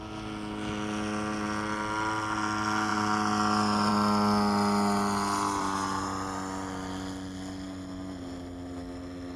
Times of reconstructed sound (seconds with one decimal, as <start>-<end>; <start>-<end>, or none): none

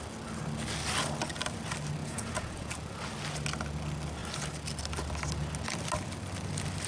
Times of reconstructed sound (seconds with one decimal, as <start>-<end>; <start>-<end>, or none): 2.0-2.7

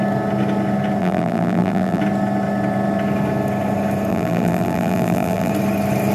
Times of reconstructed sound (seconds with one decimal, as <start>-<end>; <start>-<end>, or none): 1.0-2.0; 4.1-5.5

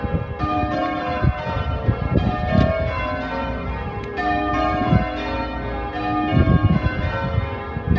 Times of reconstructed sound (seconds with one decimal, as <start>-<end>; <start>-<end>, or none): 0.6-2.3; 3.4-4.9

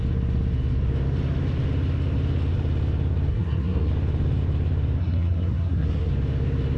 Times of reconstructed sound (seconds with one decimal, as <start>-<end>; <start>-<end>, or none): 3.3-3.9; 5.0-6.1

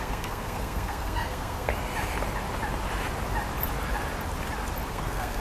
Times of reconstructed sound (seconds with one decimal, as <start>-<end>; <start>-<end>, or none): 0.0-1.7; 4.9-5.4

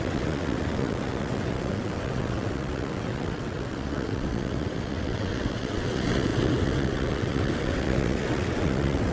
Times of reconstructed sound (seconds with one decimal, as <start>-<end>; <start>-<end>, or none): 0.0-9.1